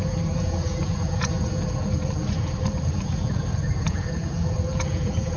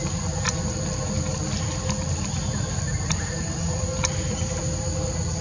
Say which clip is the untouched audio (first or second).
second